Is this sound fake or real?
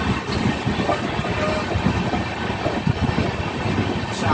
real